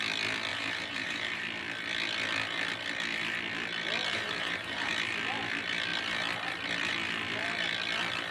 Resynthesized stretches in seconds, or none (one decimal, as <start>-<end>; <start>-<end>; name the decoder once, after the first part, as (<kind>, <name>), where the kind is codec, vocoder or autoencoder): 0.5-1.4 (vocoder, BigVGAN v2); 4.1-4.9